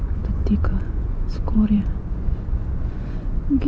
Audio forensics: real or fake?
fake